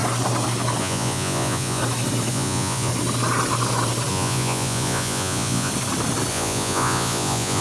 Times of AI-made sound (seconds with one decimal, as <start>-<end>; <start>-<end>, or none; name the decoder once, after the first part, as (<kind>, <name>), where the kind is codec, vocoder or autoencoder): 0.8-1.8 (vocoder, Vocos); 2.3-2.9; 4.1-5.7; 6.3-7.6